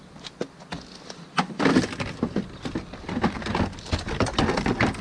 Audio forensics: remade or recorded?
recorded